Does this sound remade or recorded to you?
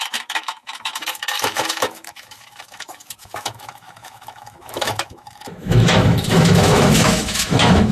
remade